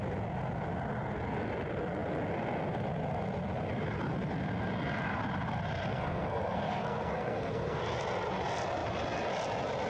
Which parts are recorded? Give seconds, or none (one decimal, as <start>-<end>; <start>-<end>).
0.0-5.9; 7.8-9.9